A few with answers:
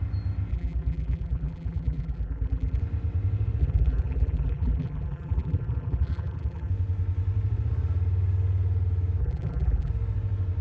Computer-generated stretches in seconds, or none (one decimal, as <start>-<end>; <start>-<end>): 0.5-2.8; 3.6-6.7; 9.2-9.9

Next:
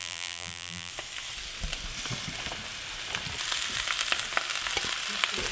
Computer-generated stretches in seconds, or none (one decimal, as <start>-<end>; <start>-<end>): 0.0-0.9

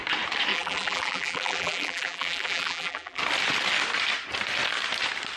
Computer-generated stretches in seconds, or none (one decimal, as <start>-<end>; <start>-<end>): 0.5-3.2

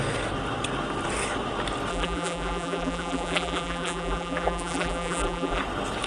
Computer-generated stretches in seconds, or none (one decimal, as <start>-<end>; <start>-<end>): 1.9-5.6

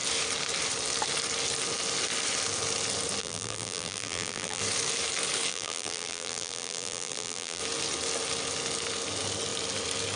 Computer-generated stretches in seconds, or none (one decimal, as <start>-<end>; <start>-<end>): 3.2-4.6; 5.5-7.6

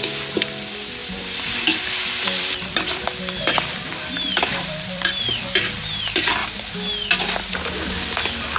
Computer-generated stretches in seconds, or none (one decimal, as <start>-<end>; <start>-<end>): 1.0-5.4